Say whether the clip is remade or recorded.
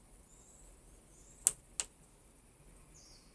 recorded